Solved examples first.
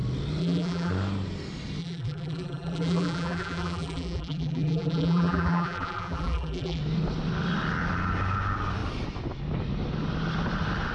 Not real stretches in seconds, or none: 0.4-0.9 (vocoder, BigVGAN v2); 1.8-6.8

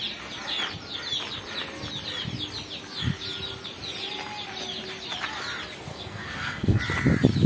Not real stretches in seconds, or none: 5.9-6.8 (codec, SNAC)